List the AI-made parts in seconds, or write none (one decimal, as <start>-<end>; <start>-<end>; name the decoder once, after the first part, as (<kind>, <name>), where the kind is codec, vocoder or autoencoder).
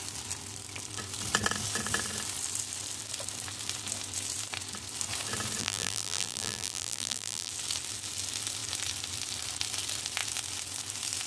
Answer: 5.6-7.5 (vocoder, BigVGAN v2)